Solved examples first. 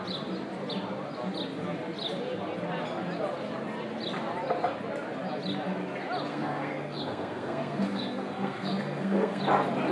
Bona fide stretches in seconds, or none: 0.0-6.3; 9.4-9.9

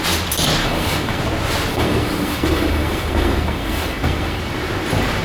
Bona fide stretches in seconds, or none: 0.0-0.6; 1.2-1.7; 4.4-5.2